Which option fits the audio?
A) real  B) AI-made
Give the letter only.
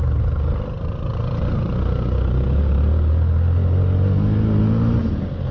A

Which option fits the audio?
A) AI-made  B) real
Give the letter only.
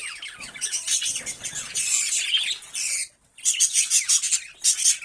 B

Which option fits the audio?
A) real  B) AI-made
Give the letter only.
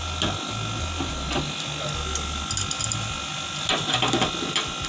A